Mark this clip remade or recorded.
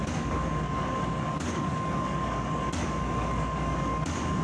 remade